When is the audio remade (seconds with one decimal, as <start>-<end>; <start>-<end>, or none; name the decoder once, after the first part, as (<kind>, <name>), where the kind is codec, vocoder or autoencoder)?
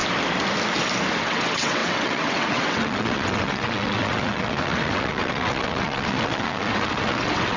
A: 1.1-7.6 (vocoder, WaveNeXt)